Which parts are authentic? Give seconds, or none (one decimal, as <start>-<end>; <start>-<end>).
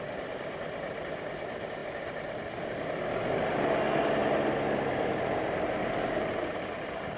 0.0-7.2